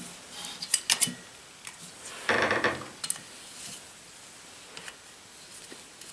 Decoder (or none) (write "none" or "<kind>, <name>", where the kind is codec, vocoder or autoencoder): none